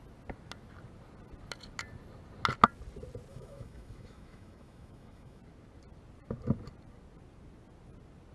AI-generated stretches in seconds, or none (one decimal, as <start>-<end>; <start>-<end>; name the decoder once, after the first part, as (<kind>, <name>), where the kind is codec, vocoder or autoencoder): 3.3-5.4 (autoencoder, DAC-VAE)